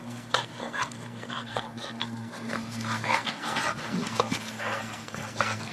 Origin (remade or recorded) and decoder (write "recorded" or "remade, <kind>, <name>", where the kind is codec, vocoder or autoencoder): remade, codec, SNAC